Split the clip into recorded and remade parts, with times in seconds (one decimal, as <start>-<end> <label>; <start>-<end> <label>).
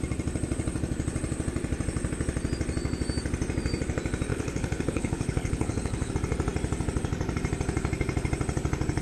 0.0-4.3 recorded; 4.3-6.1 remade; 6.1-9.0 recorded